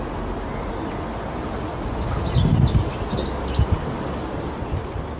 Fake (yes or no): no